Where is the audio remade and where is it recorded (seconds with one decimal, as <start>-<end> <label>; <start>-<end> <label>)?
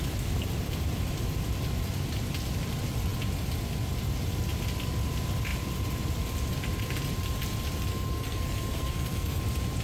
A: 0.0-7.9 recorded; 7.9-9.4 remade; 9.4-9.8 recorded